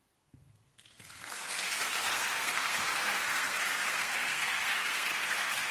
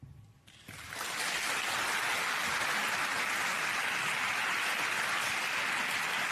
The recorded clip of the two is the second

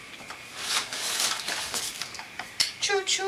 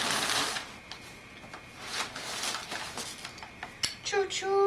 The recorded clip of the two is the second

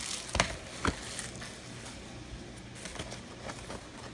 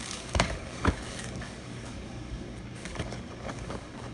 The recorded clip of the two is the first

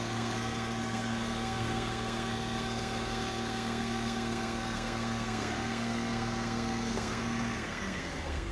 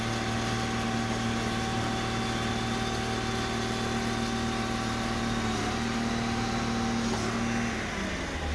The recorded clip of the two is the second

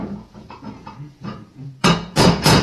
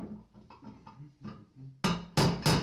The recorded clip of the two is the second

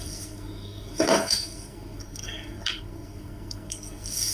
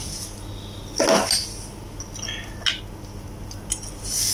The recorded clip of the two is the second